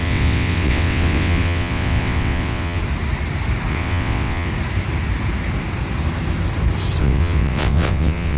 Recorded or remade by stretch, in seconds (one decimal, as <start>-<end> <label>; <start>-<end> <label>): 0.0-2.8 remade; 2.8-3.7 recorded; 3.7-4.5 remade; 4.5-7.0 recorded; 7.0-8.4 remade